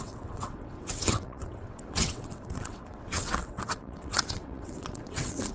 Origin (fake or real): fake